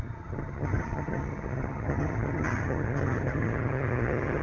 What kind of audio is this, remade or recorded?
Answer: remade